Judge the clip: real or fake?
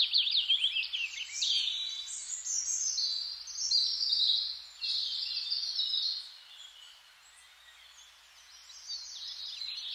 real